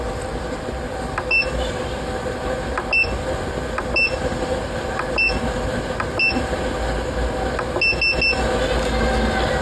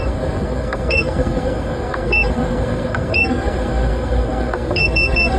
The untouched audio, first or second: first